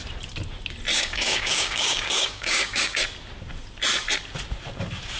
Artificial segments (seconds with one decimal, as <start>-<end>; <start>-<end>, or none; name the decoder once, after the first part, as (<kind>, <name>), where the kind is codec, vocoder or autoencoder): 0.9-3.0 (codec, DAC)